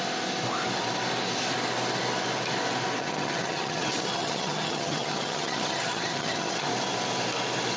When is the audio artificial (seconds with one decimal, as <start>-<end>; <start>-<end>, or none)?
3.0-6.7